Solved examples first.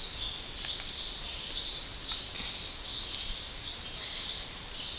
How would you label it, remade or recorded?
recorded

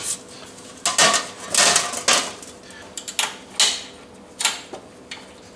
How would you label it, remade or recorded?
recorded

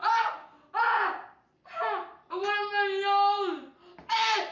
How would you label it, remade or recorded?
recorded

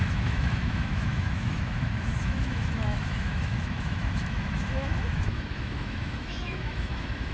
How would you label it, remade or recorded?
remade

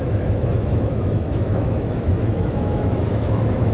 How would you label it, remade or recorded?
remade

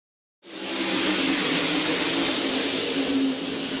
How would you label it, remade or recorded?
recorded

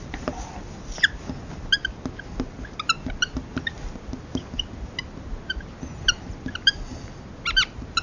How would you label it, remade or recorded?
recorded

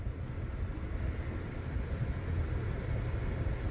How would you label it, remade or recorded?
recorded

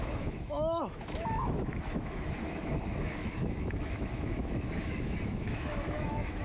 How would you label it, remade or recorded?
remade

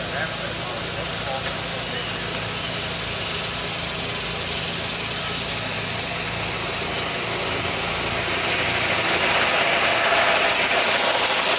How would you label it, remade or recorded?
recorded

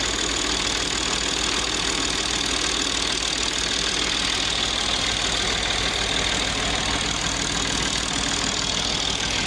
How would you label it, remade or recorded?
recorded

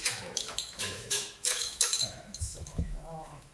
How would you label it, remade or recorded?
remade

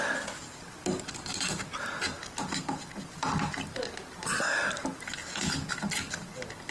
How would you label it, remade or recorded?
recorded